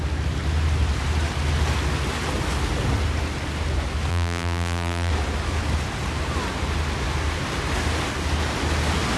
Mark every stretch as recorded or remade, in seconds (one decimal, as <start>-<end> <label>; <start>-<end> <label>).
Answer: 0.0-4.1 recorded; 4.1-5.1 remade; 5.1-9.2 recorded